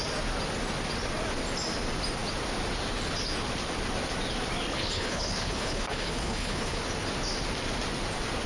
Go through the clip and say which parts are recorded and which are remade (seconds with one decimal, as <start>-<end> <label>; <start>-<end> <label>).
0.0-4.7 recorded; 4.7-6.8 remade; 6.8-8.5 recorded